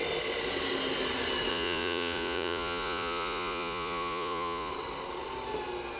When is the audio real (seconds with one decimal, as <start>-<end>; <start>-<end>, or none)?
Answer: 0.0-1.5; 4.7-6.0